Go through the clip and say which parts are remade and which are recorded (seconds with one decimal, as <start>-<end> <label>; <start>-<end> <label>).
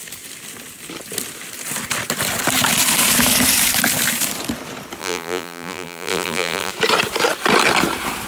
0.0-5.0 recorded; 5.0-6.7 remade; 6.7-8.3 recorded